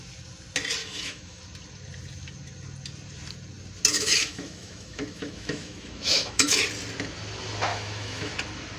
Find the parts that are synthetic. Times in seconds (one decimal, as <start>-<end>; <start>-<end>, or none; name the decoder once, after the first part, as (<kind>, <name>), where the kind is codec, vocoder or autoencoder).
0.8-1.4 (autoencoder, DAC-VAE); 3.9-6.6; 7.7-8.3